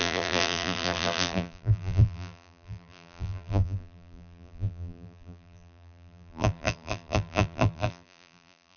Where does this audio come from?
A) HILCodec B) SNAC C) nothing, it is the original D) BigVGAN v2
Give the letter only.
D